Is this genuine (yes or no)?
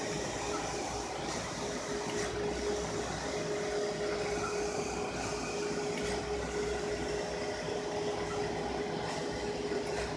yes